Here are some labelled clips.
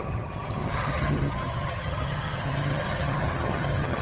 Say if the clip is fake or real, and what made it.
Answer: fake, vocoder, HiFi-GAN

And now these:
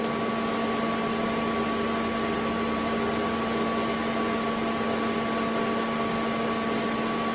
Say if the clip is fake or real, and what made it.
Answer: real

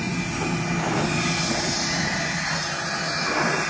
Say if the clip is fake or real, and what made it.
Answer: real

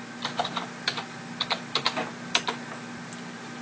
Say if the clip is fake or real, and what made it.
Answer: real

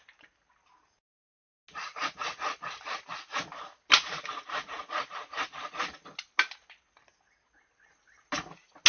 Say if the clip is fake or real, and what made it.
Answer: real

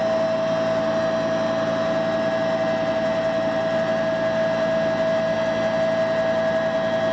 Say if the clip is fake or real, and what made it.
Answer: real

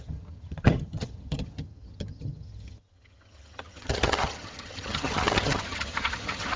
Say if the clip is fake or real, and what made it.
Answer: fake, vocoder, HiFi-GAN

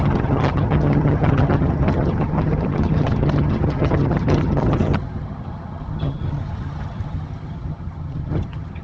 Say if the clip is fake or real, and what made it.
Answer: fake, vocoder, HiFi-GAN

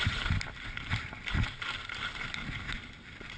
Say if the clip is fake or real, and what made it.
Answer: real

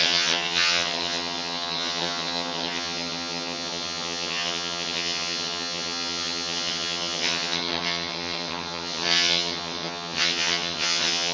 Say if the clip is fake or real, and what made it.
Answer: fake, vocoder, HiFi-GAN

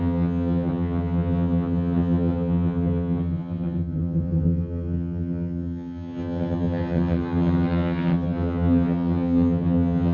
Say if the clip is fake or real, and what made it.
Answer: fake, vocoder, HiFi-GAN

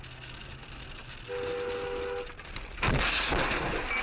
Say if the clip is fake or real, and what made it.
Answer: real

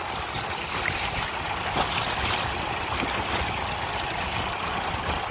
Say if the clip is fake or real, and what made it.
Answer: real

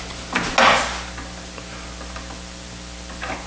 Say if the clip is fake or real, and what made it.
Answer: real